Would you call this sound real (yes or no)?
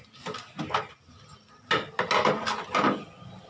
yes